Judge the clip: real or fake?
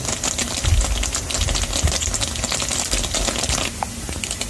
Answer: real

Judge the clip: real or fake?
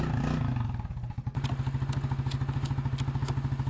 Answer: real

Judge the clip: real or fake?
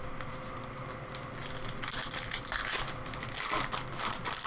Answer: real